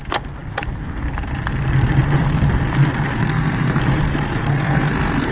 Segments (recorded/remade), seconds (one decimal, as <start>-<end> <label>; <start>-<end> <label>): 0.0-3.2 recorded; 3.2-3.8 remade; 3.8-4.5 recorded; 4.5-5.3 remade